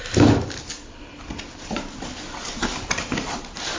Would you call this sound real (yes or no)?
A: yes